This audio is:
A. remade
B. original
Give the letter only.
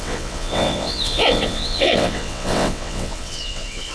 A